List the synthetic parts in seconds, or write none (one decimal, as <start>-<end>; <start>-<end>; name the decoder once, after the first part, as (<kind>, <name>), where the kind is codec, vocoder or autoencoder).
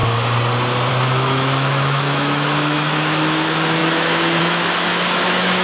0.9-5.6 (autoencoder, DAC-VAE)